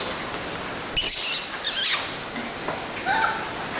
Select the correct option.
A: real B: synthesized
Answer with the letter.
A